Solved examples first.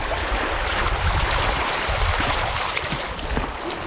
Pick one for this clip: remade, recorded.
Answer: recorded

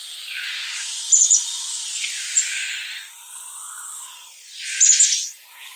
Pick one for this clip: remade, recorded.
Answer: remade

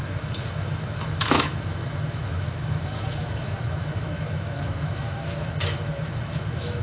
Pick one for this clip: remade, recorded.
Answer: remade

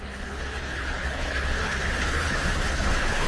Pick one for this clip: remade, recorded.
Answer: remade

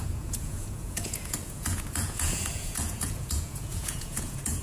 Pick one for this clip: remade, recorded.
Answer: remade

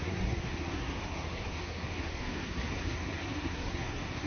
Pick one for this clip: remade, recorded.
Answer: remade